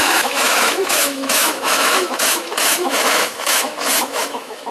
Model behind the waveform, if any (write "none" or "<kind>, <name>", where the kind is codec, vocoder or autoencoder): autoencoder, DAC-VAE